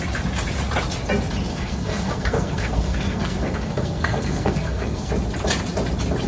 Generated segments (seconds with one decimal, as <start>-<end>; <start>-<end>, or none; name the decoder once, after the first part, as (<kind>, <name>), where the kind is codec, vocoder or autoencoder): 1.5-5.1 (codec, SNAC)